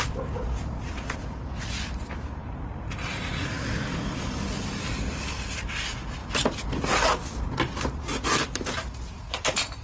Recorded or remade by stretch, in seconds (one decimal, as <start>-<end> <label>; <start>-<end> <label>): 0.0-9.8 recorded